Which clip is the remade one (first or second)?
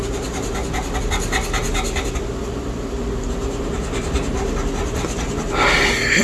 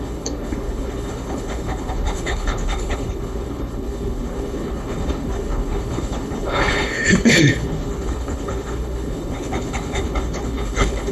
second